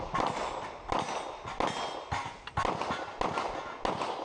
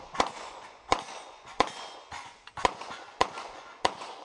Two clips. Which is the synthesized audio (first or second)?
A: second